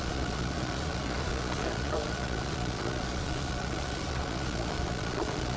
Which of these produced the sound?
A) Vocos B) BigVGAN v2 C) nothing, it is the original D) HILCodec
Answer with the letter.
A